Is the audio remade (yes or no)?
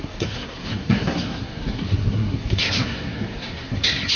yes